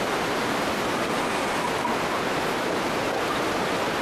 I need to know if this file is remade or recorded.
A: recorded